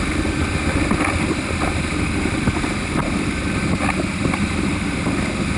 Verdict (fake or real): real